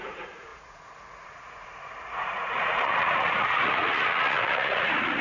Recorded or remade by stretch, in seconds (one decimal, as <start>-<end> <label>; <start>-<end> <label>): 0.0-5.2 remade